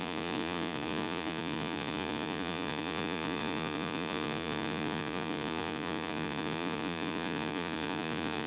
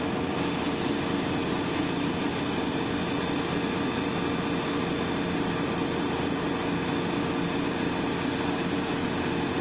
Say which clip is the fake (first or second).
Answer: first